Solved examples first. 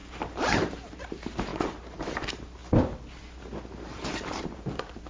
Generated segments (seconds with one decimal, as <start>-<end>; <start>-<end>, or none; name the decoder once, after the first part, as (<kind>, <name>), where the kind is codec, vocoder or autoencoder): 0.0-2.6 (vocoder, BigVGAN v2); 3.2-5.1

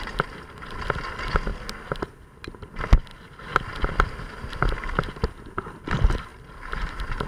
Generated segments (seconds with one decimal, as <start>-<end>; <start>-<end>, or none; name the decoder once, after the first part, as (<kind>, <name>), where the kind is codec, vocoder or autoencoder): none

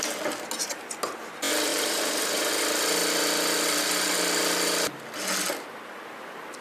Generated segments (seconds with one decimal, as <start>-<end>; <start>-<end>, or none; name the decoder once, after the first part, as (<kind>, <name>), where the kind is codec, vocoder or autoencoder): 1.7-2.5 (vocoder, BigVGAN v2)

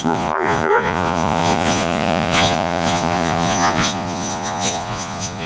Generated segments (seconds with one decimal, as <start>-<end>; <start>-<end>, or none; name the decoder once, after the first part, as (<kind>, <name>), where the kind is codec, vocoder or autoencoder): 0.0-5.5 (vocoder, Vocos)

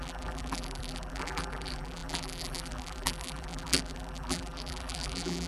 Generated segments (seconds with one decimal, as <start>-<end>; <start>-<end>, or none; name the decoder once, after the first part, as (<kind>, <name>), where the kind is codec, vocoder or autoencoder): 0.0-5.5 (vocoder, BigVGAN v2)